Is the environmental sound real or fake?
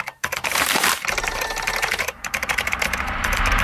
fake